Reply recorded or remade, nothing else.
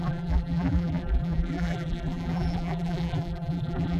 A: remade